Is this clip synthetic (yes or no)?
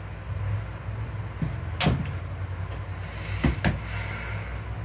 no